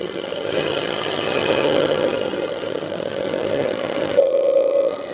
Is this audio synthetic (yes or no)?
yes